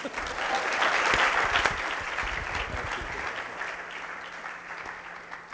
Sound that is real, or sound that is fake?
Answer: real